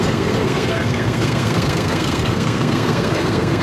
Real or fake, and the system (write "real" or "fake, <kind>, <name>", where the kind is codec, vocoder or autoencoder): fake, codec, SNAC